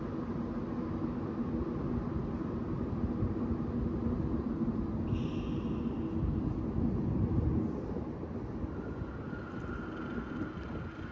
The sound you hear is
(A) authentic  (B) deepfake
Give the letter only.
A